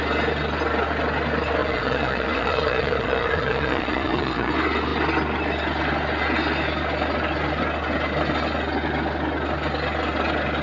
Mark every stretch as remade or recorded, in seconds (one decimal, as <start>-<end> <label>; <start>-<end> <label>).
0.0-1.6 recorded; 1.6-4.5 remade; 4.5-10.6 recorded